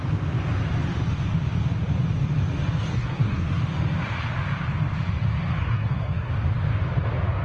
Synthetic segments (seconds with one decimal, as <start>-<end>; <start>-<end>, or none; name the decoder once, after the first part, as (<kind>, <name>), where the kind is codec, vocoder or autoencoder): 2.9-3.6 (codec, SNAC); 5.6-6.3